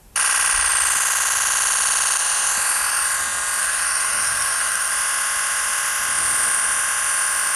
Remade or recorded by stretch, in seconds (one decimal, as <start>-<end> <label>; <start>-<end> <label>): 0.0-3.6 recorded; 3.6-4.9 remade; 4.9-7.6 recorded

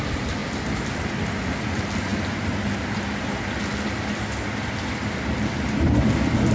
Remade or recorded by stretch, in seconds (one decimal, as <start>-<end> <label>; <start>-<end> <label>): 0.0-6.5 recorded

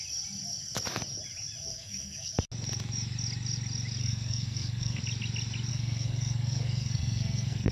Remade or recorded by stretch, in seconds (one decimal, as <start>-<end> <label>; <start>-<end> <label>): 0.0-1.7 recorded; 1.7-2.3 remade; 2.3-4.0 recorded; 4.0-5.0 remade; 5.0-5.7 recorded; 5.7-7.7 remade

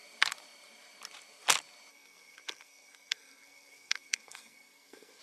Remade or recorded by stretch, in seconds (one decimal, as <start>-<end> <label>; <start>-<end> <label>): 0.0-1.9 recorded; 1.9-5.2 remade

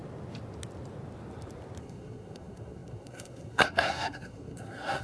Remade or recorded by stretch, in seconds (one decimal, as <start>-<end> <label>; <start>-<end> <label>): 0.0-1.8 recorded; 1.8-5.0 remade

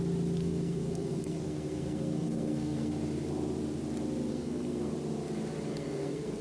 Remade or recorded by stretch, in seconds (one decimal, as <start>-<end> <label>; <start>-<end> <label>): 0.0-0.4 recorded; 0.4-2.9 remade; 2.9-4.3 recorded; 4.3-4.9 remade; 4.9-5.7 recorded; 5.7-6.4 remade

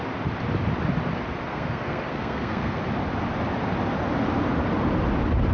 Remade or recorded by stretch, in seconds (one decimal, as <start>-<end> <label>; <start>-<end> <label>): 0.0-1.5 recorded; 1.5-2.8 remade; 2.8-5.5 recorded

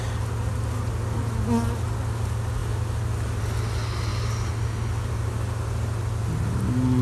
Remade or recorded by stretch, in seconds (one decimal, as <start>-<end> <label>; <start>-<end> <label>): 0.0-7.0 recorded